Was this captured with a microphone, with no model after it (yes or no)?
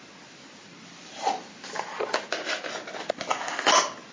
yes